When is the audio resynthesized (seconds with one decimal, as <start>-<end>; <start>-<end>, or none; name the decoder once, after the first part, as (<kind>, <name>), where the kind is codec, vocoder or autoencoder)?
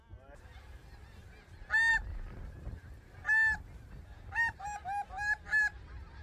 none